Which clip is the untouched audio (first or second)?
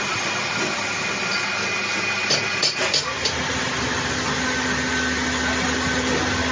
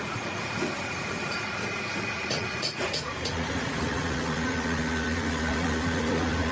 first